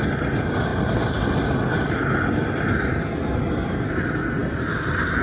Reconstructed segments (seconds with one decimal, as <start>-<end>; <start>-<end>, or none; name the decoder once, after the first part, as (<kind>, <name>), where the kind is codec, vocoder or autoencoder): none